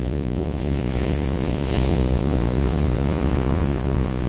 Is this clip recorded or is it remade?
remade